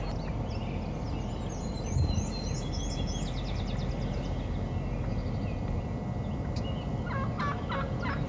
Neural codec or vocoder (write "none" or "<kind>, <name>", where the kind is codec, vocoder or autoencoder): none